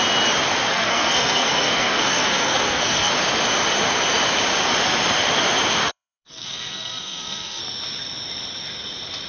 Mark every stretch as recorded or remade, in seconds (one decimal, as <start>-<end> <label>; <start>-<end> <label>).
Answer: 0.0-0.7 recorded; 0.7-3.1 remade; 3.1-5.8 recorded; 5.8-7.6 remade; 7.6-9.3 recorded